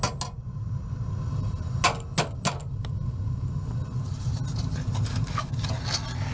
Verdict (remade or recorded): recorded